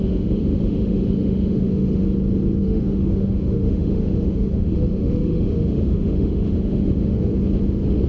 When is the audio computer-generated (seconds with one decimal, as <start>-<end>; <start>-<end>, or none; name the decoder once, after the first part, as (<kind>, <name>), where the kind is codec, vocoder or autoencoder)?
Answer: 0.0-2.0 (autoencoder, DAC-VAE); 2.6-7.3